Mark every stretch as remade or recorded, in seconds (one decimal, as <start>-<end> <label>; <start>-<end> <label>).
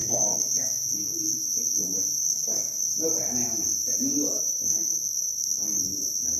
0.0-2.9 remade; 2.9-4.4 recorded; 4.4-6.4 remade